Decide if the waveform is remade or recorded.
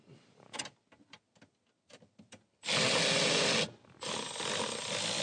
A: recorded